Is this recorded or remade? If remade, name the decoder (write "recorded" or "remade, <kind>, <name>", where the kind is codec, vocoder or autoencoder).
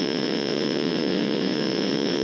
remade, vocoder, WaveNeXt